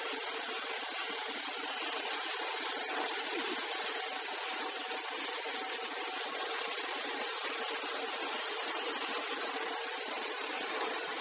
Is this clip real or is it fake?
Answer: real